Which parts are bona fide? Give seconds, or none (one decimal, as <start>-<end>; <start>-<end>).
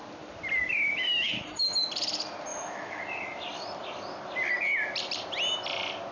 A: 0.0-0.6; 1.7-2.5; 3.0-6.1